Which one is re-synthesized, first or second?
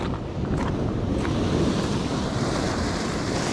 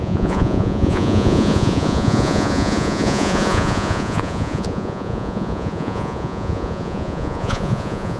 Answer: second